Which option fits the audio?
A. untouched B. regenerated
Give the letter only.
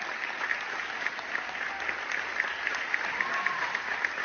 A